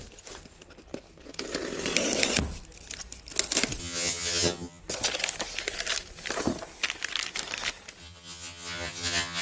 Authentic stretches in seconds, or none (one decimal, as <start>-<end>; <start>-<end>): 0.0-3.8; 4.8-8.0